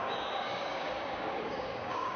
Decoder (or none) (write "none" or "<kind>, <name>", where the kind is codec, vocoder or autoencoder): codec, DAC